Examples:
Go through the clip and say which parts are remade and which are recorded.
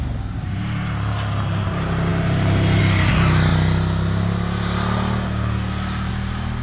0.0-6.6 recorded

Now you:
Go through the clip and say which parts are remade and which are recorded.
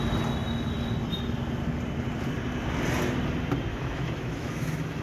0.0-3.7 recorded; 3.7-5.0 remade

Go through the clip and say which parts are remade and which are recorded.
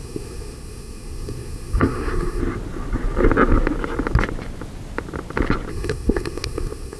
0.0-2.4 remade; 2.4-5.7 recorded; 5.7-7.0 remade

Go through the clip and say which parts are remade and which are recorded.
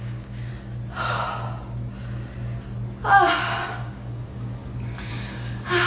0.0-0.5 remade; 0.5-3.7 recorded; 3.7-4.6 remade; 4.6-5.1 recorded; 5.1-5.9 remade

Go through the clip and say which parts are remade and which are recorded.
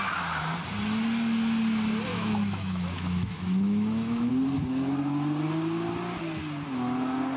0.0-2.1 recorded; 2.1-4.3 remade; 4.3-7.4 recorded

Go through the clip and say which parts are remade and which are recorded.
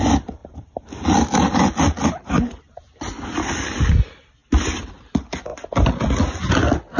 0.0-7.0 recorded